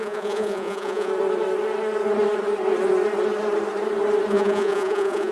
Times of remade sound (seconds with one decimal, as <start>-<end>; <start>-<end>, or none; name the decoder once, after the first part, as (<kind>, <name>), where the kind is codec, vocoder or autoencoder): 0.0-1.1 (vocoder, Vocos); 4.3-5.3